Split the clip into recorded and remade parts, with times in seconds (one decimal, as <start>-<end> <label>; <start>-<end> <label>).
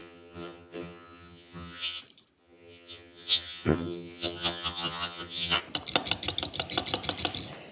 0.0-2.0 remade; 2.0-2.4 recorded; 2.4-5.6 remade; 5.6-7.7 recorded